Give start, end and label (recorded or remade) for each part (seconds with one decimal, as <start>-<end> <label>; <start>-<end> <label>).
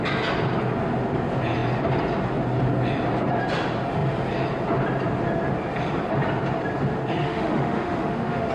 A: 0.0-7.2 recorded; 7.2-8.5 remade